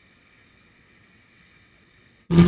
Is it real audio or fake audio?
fake